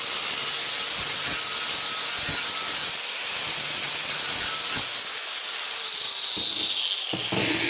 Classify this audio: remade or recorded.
recorded